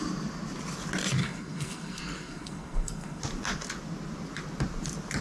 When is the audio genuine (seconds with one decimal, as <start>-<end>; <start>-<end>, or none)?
0.0-1.2; 3.2-5.2